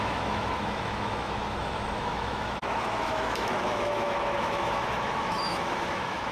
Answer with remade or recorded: remade